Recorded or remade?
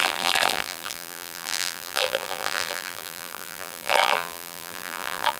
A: remade